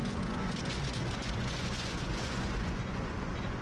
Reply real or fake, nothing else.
fake